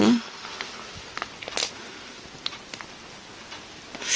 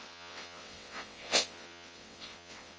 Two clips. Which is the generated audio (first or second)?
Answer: second